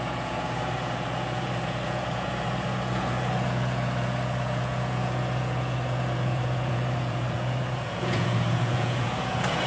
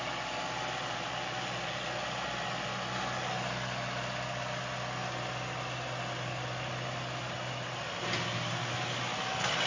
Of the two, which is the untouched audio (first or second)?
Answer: second